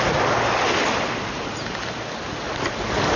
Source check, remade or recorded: recorded